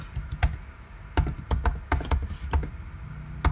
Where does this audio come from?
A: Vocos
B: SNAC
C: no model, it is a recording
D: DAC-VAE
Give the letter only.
C